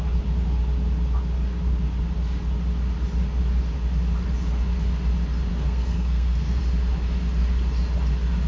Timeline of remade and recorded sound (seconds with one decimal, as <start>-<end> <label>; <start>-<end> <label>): 0.0-5.5 recorded; 5.5-6.6 remade; 6.6-8.5 recorded